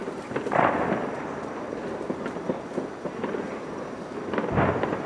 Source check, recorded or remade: recorded